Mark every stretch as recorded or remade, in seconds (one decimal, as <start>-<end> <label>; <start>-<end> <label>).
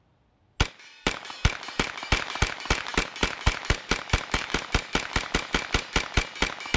0.0-6.8 recorded